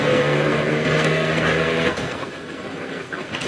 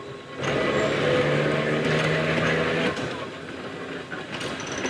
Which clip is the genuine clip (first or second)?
second